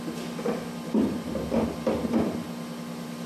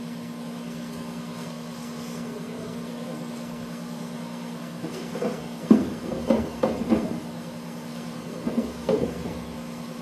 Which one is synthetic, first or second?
second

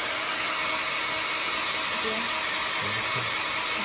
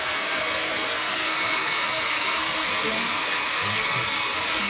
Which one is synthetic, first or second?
second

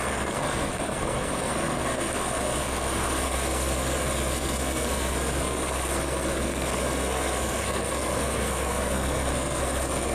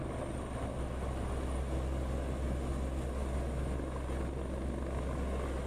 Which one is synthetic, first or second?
first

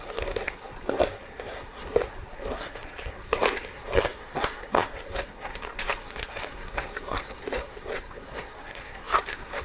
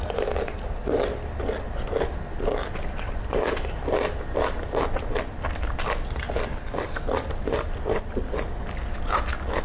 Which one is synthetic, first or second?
first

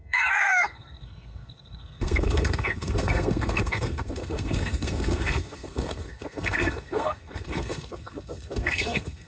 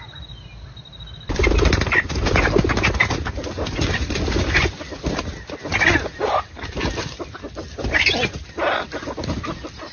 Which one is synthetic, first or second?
first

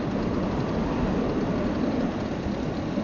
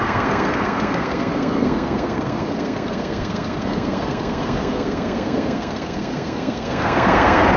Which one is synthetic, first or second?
second